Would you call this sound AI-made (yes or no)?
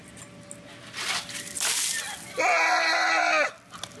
no